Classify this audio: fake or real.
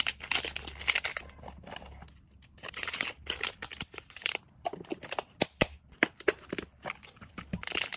real